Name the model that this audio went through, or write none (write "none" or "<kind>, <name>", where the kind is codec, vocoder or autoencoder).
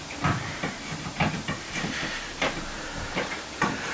vocoder, BigVGAN v2